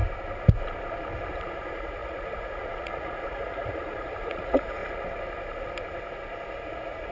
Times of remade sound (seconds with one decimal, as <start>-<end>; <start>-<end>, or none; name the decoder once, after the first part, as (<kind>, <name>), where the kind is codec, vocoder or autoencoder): 1.3-4.8 (vocoder, Vocos); 6.5-7.1